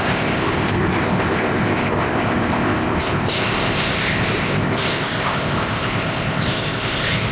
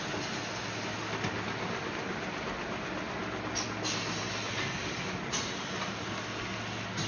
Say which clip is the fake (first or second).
first